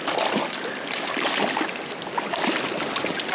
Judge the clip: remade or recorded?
recorded